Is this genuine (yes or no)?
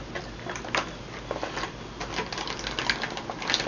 yes